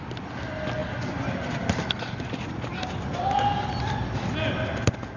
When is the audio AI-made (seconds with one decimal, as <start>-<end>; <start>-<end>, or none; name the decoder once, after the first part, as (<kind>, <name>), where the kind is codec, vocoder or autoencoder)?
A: none